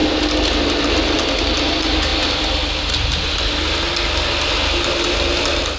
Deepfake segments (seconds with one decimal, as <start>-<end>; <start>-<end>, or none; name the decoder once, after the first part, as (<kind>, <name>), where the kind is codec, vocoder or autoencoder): none